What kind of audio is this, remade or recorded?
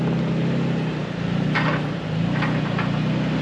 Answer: recorded